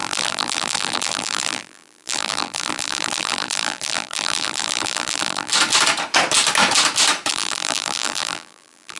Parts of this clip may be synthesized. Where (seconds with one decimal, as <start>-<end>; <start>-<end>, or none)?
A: 0.0-5.5; 7.3-9.0